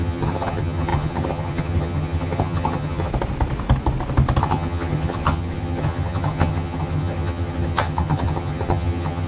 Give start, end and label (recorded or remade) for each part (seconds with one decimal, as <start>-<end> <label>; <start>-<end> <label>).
0.0-3.1 remade; 3.1-4.4 recorded; 4.4-9.3 remade